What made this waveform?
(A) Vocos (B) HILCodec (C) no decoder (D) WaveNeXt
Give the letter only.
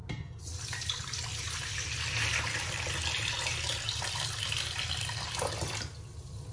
C